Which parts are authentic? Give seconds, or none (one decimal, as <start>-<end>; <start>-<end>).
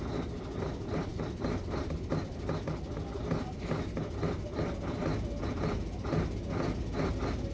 0.0-7.5